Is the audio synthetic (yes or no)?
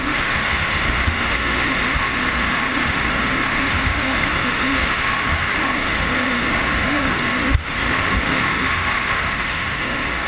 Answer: yes